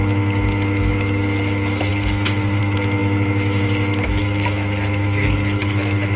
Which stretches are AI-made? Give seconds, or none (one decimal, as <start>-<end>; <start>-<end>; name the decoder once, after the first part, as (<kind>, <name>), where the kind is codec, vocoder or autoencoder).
0.0-6.2 (autoencoder, DAC-VAE)